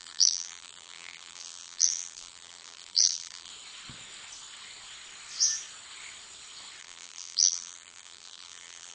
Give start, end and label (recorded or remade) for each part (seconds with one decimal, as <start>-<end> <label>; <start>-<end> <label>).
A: 0.0-3.5 remade; 3.5-6.8 recorded; 6.8-8.9 remade